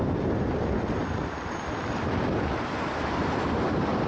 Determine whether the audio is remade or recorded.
remade